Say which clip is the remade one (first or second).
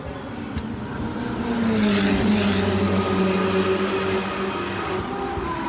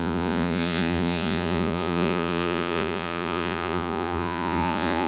second